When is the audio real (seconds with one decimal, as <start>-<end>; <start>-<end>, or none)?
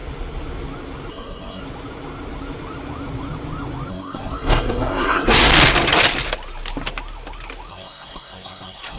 0.0-1.1; 1.6-3.9; 5.5-7.7